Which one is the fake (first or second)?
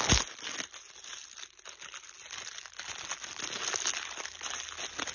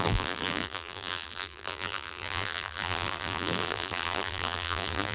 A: second